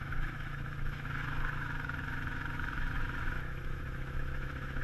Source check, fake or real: fake